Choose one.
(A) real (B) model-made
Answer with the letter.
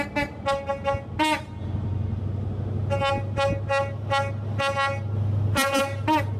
A